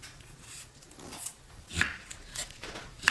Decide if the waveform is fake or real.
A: fake